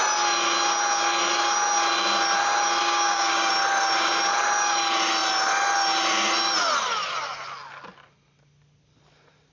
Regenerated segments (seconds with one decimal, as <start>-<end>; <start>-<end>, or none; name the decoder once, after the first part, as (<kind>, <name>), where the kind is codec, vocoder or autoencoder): 2.8-3.5 (codec, DAC)